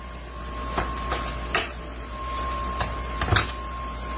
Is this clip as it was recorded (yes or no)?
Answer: yes